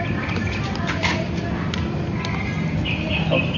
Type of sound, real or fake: real